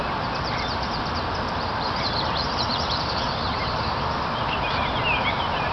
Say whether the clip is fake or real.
real